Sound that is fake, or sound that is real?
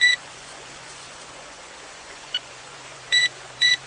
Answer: fake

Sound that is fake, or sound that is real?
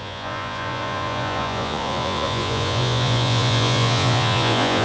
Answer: fake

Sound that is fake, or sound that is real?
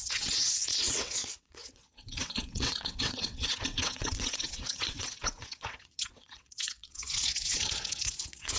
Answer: fake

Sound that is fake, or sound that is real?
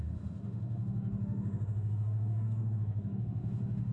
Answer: fake